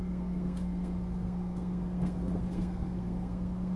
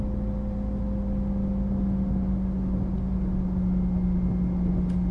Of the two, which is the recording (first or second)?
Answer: second